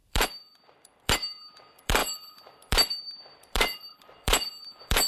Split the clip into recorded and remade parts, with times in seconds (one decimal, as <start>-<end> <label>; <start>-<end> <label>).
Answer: 0.0-5.1 remade